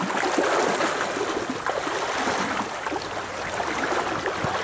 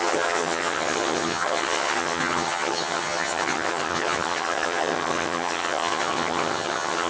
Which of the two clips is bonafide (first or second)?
first